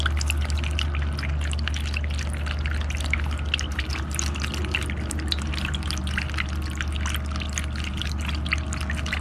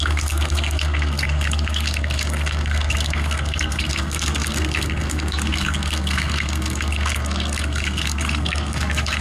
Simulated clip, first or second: second